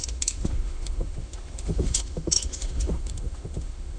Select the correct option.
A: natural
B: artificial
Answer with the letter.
B